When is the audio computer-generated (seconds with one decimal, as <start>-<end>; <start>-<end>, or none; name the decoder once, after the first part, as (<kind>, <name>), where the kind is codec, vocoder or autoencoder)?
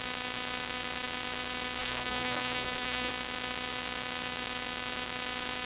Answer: 1.8-3.1 (codec, SNAC)